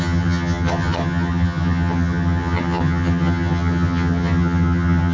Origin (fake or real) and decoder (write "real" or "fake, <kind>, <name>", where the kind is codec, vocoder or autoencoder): fake, vocoder, HiFi-GAN